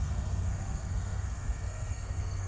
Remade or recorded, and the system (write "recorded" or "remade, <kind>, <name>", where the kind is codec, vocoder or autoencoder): remade, codec, SNAC